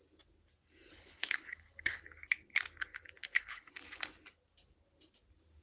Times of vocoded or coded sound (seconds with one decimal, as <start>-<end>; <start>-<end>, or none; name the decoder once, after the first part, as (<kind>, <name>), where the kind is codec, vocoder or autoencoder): 0.9-2.0 (codec, HILCodec); 3.2-3.7